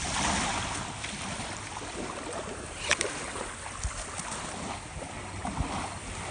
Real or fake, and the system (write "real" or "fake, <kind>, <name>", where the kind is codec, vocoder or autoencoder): real